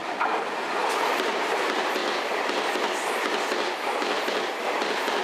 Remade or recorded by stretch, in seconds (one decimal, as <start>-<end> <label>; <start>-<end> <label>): 0.0-2.0 remade; 2.0-5.2 recorded